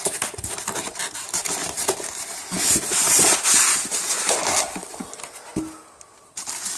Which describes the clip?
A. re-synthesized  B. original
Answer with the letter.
B